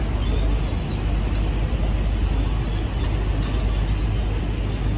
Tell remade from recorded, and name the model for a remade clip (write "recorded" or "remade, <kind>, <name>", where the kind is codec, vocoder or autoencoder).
recorded